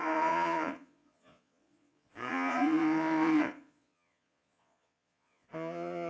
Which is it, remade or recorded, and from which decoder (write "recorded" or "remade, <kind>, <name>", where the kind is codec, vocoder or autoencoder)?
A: remade, vocoder, Vocos